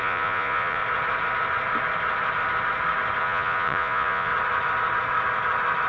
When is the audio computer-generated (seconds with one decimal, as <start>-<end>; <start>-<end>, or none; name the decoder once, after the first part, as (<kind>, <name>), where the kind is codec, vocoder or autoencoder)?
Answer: 0.0-0.8 (vocoder, Vocos); 3.2-4.3